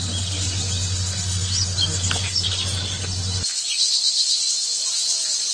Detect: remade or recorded recorded